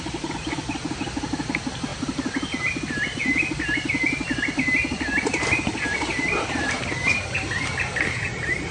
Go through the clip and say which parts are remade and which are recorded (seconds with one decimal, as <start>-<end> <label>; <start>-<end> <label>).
0.0-8.7 recorded